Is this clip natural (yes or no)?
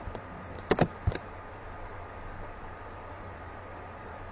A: no